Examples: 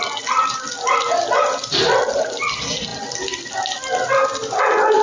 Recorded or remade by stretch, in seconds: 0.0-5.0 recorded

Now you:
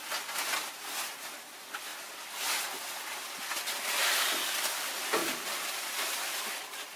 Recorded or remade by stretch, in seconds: 0.0-5.2 recorded; 5.2-6.0 remade; 6.0-7.0 recorded

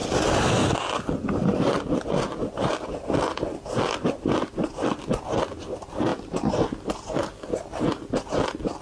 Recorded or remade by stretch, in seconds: 0.0-5.0 remade; 5.0-6.1 recorded; 6.1-6.7 remade; 6.7-8.8 recorded

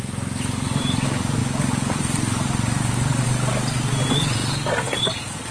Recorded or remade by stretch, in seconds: 0.0-5.5 recorded

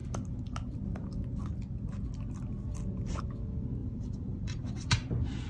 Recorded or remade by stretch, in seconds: 0.0-3.8 recorded; 3.8-5.1 remade; 5.1-5.5 recorded

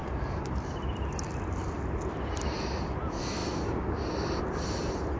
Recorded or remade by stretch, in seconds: 0.0-0.7 remade; 0.7-5.2 recorded